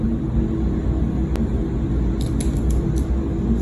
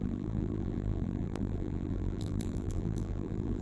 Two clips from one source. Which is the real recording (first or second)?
first